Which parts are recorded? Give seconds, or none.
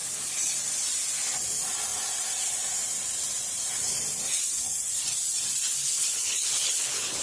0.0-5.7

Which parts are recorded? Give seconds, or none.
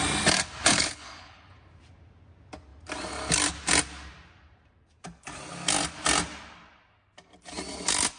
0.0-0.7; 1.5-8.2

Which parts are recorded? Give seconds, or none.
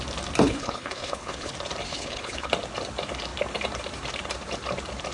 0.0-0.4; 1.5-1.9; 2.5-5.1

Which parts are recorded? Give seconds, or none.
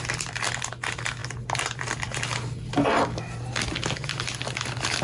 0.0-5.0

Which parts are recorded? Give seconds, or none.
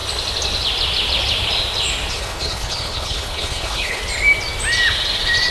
0.0-2.1; 4.0-5.5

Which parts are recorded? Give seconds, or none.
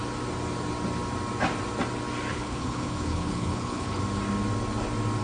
0.0-2.3; 4.0-5.2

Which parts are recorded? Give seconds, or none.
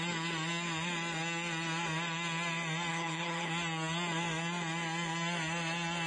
0.0-2.9; 3.5-6.1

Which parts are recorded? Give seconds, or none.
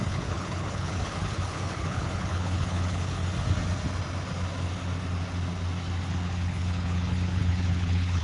3.2-6.1